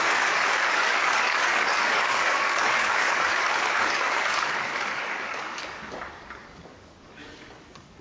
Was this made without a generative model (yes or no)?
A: no